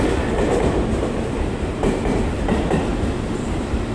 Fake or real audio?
fake